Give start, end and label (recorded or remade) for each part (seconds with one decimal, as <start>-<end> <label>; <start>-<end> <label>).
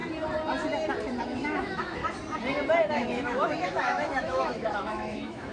0.0-1.2 recorded; 1.2-2.0 remade; 2.0-2.9 recorded; 2.9-5.5 remade